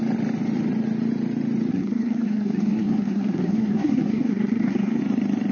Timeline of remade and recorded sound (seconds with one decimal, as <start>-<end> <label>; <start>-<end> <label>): 0.0-1.7 recorded; 1.7-5.0 remade; 5.0-5.5 recorded